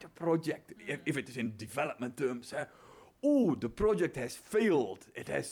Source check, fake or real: fake